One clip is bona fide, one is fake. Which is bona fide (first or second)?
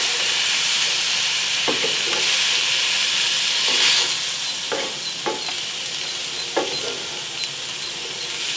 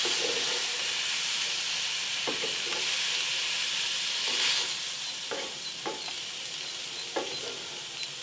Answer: first